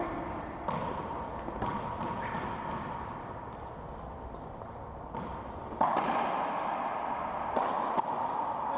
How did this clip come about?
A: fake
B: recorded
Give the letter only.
A